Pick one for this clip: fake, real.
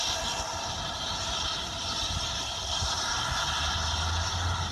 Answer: real